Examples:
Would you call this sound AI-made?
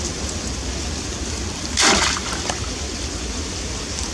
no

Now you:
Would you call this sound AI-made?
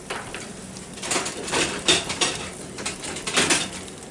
yes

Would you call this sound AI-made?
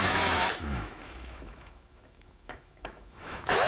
yes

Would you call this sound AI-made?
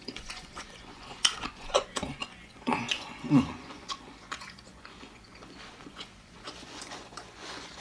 yes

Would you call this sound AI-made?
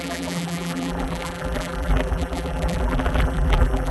yes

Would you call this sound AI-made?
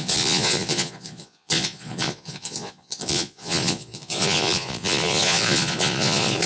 yes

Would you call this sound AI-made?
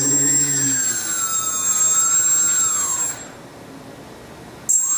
no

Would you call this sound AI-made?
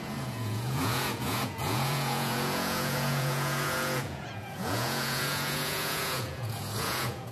yes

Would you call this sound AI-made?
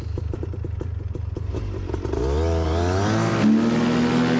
no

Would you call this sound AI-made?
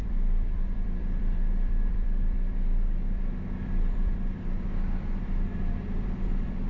yes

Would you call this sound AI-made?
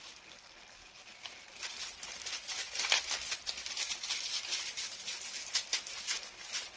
no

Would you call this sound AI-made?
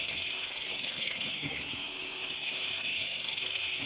yes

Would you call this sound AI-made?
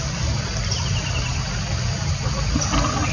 no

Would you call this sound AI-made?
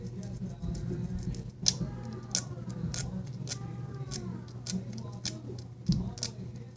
no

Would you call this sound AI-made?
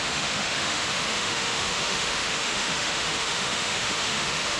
yes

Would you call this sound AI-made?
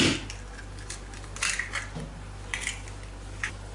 no